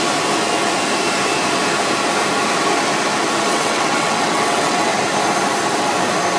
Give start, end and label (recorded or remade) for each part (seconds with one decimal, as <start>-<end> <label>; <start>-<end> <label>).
0.0-3.5 recorded; 3.5-4.9 remade; 4.9-6.4 recorded